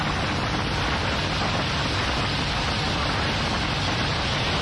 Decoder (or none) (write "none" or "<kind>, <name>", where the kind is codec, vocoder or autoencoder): none